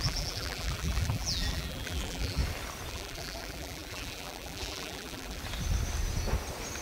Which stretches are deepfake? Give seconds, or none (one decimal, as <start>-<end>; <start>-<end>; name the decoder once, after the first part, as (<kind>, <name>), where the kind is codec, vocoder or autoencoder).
0.0-2.4 (vocoder, BigVGAN v2); 2.9-5.4